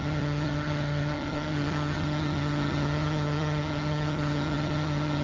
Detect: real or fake fake